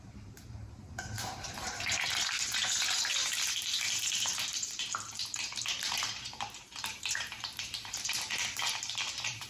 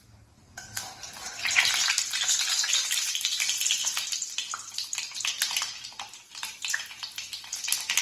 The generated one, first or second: first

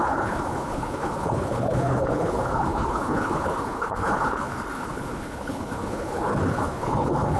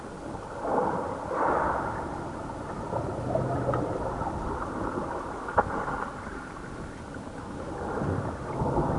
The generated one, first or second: first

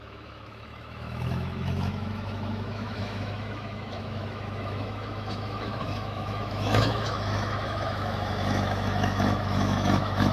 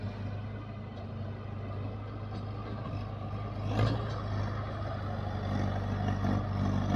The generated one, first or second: first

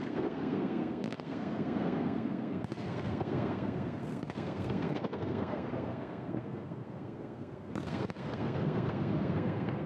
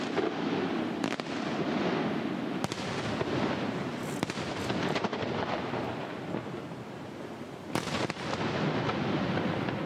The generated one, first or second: first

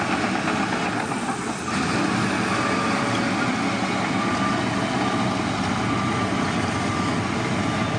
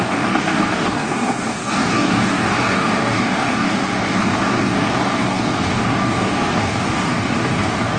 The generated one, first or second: second